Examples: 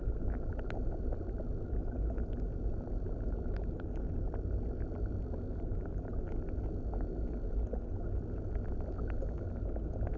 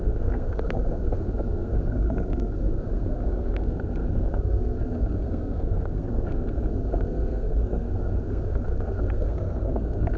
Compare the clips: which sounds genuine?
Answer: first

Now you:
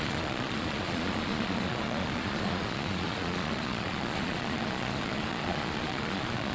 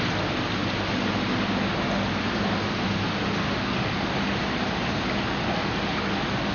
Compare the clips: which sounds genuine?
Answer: second